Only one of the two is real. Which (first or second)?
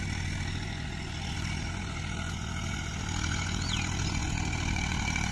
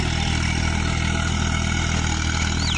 second